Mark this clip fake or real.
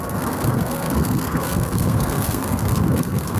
fake